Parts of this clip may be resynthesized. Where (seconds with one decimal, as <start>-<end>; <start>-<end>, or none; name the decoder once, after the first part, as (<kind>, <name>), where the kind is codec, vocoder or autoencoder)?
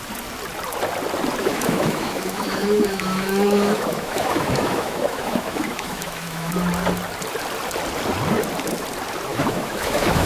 1.4-6.5 (autoencoder, DAC-VAE); 9.3-10.3